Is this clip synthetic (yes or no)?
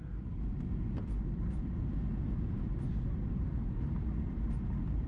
no